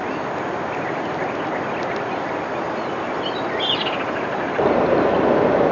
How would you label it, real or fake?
real